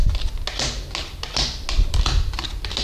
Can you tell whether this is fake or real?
real